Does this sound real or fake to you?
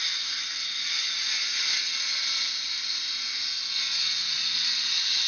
fake